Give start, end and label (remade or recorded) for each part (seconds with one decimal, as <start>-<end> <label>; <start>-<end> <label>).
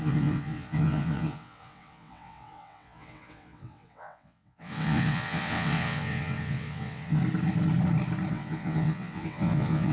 0.0-7.2 remade; 7.2-8.3 recorded; 8.3-9.9 remade